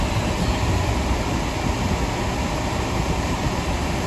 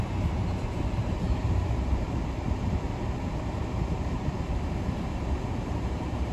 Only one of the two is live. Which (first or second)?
first